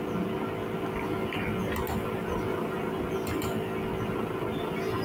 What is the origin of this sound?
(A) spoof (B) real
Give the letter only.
B